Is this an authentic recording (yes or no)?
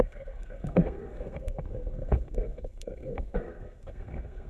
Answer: no